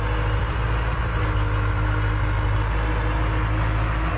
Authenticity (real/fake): real